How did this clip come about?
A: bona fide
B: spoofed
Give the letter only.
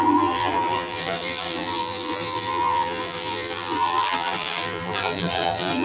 B